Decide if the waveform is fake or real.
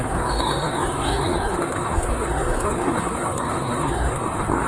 fake